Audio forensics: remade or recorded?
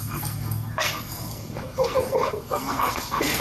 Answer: remade